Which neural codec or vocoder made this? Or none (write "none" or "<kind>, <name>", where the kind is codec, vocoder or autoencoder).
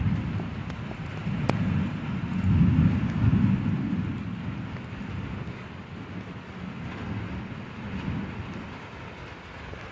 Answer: none